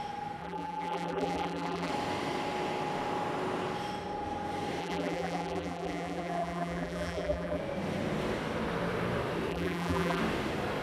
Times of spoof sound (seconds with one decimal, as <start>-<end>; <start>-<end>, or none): 0.4-1.9; 4.8-7.6; 9.5-10.2